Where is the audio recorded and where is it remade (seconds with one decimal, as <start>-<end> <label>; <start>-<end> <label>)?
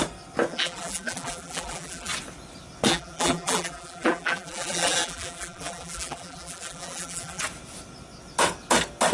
0.0-0.5 recorded; 0.5-2.1 remade; 2.1-2.9 recorded; 2.9-7.4 remade; 7.4-9.1 recorded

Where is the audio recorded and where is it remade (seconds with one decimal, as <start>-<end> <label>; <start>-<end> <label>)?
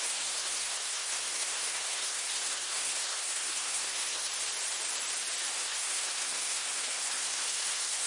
0.0-4.3 remade; 4.3-5.5 recorded; 5.5-8.1 remade